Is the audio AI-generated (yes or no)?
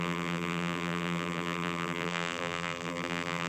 yes